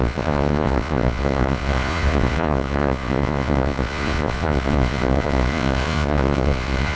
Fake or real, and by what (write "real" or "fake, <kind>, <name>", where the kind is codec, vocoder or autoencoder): fake, vocoder, Vocos